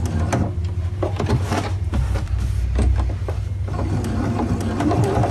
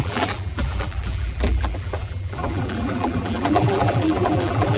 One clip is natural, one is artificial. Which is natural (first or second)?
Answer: first